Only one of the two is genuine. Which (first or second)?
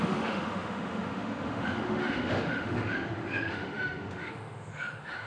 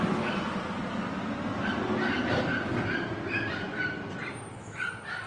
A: second